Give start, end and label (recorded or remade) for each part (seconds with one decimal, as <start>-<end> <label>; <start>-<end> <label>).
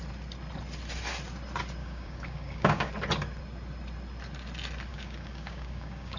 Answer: 0.0-1.8 recorded; 1.8-2.9 remade; 2.9-4.9 recorded; 4.9-6.2 remade